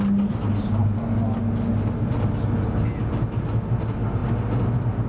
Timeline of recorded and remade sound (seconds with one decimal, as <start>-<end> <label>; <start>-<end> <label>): 0.0-5.1 recorded

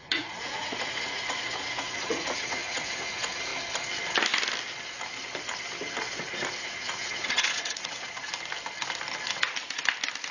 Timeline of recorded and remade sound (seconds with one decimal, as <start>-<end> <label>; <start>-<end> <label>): 0.0-3.5 remade; 3.5-6.6 recorded; 6.6-8.3 remade; 8.3-10.3 recorded

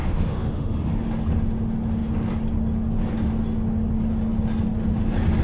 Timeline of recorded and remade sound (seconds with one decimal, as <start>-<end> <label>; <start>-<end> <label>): 0.0-1.0 remade; 1.0-5.4 recorded

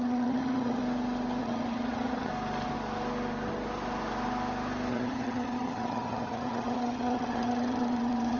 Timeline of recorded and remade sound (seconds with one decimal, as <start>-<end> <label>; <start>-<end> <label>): 0.0-0.8 remade; 0.8-1.4 recorded; 1.4-2.3 remade; 2.3-4.9 recorded; 4.9-8.4 remade

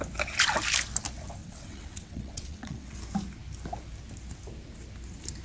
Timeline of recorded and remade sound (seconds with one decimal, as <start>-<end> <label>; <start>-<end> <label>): 0.0-1.4 recorded; 1.4-3.0 remade; 3.0-5.4 recorded

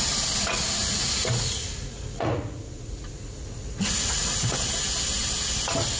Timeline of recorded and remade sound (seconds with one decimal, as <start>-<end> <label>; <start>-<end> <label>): 0.0-0.8 recorded; 0.8-4.4 remade; 4.4-6.0 recorded